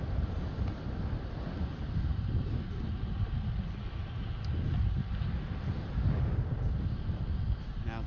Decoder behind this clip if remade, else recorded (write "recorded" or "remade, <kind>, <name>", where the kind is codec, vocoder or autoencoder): recorded